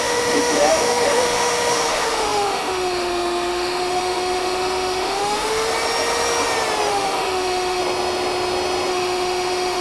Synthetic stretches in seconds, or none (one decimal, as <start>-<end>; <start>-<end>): 0.0-5.7; 6.9-7.8; 8.9-9.8